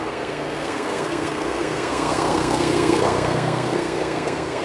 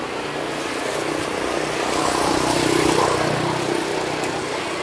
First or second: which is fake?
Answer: first